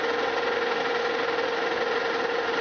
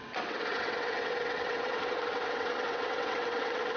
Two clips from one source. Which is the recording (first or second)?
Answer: first